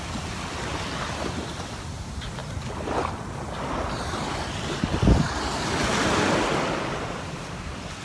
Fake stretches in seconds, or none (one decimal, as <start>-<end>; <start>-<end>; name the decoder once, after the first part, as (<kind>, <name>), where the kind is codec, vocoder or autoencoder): none